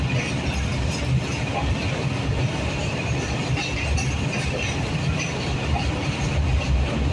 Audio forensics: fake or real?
real